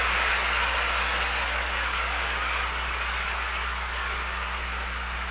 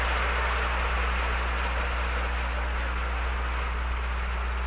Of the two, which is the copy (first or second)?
first